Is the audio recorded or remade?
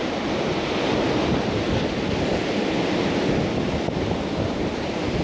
recorded